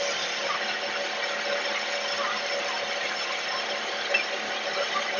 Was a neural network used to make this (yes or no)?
no